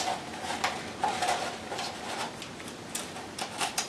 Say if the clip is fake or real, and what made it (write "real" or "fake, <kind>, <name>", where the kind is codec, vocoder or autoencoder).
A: real